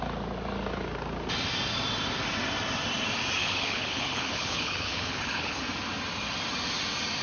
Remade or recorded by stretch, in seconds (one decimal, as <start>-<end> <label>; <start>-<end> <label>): 0.0-3.4 recorded; 3.4-5.6 remade; 5.6-7.2 recorded